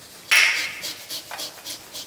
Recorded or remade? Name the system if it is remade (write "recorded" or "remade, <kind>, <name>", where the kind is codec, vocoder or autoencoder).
recorded